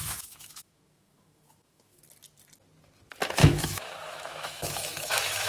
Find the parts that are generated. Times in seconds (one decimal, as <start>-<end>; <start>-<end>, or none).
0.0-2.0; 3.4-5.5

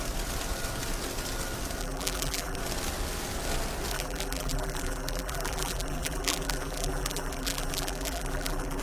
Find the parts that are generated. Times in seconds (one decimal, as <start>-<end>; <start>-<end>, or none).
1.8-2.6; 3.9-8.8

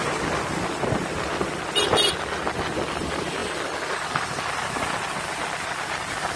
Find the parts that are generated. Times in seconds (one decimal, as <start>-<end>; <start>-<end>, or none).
none

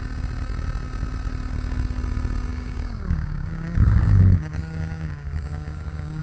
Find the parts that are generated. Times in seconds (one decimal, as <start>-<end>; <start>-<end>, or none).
2.5-6.2

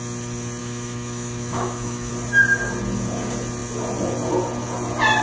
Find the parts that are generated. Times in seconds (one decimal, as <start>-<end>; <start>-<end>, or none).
0.6-2.1